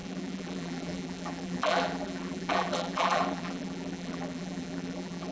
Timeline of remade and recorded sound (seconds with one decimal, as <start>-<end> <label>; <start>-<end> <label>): 0.0-5.3 remade

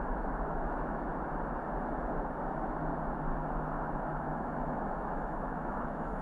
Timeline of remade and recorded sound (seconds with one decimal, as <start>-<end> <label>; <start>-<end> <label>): 0.0-1.1 remade; 1.1-4.1 recorded; 4.1-6.2 remade